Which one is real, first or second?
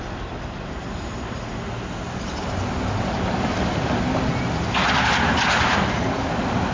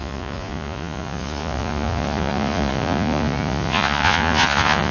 first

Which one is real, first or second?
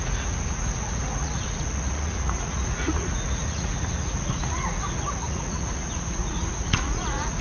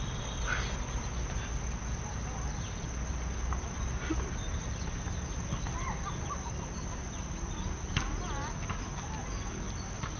second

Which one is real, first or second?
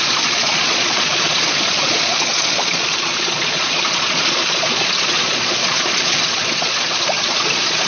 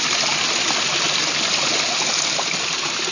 second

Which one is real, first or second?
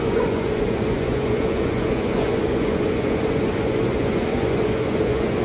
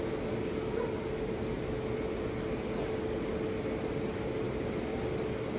second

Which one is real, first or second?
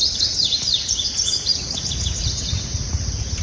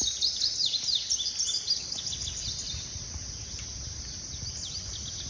second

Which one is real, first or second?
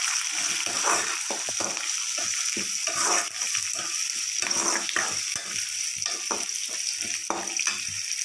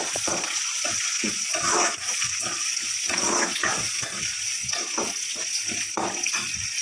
first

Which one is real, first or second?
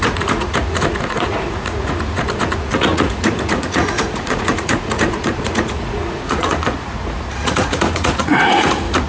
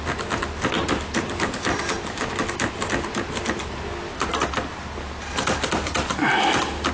second